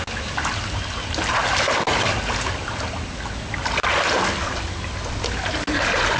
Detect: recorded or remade recorded